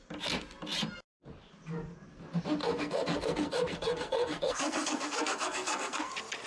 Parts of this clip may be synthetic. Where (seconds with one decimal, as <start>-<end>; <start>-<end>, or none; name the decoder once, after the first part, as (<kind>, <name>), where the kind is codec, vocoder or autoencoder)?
2.6-6.1 (codec, SNAC)